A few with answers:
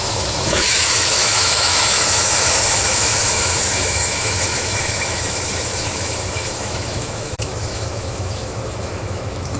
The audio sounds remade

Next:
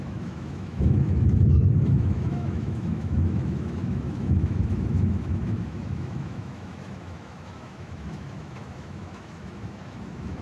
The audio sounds remade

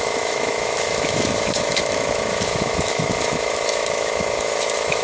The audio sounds remade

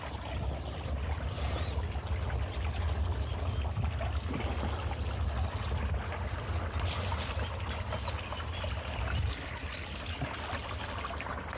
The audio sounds recorded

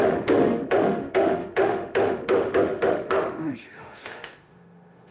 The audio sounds remade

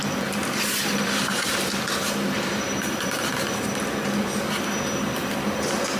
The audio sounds recorded